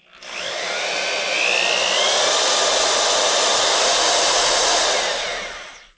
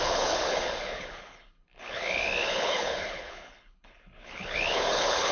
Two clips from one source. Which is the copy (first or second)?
second